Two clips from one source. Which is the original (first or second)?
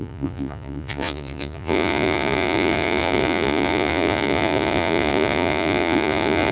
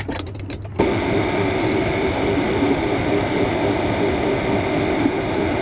second